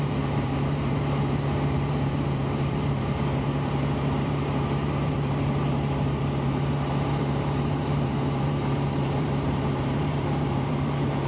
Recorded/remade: remade